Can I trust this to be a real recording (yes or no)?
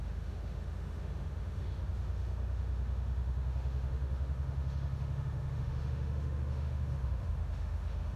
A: no